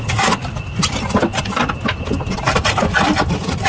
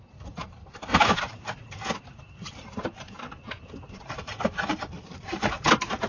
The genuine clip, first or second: first